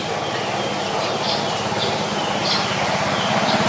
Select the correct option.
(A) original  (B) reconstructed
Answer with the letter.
A